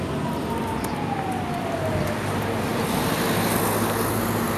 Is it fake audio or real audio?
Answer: real